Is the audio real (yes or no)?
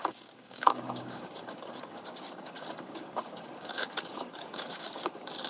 no